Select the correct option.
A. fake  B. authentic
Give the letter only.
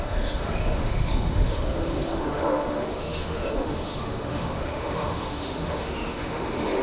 A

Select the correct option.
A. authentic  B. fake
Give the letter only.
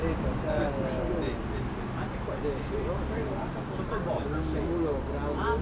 A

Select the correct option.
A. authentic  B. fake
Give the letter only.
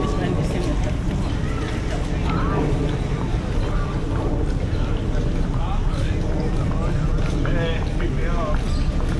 A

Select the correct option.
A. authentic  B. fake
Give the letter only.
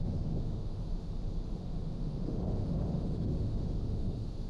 B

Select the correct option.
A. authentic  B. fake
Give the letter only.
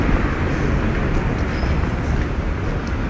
A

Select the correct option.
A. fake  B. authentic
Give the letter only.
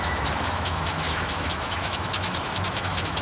A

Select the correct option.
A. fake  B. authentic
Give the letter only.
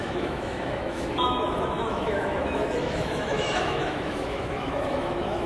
A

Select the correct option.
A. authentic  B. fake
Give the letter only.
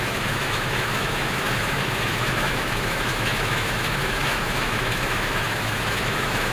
B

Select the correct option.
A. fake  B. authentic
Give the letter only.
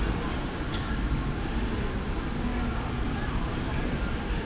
B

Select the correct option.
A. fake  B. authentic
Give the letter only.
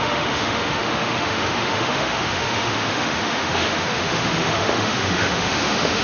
A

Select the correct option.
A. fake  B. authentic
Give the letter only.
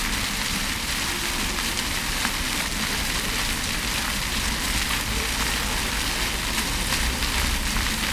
B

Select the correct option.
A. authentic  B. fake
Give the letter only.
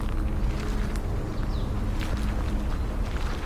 A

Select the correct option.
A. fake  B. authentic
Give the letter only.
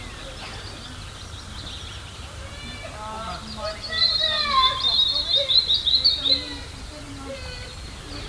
B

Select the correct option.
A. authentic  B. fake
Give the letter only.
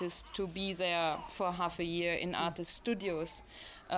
A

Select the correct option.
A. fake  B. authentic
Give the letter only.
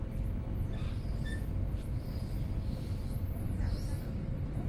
B